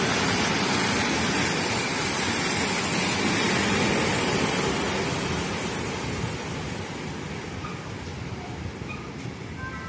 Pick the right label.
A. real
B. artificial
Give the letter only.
A